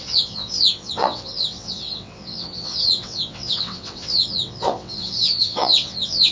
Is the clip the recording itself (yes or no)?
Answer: no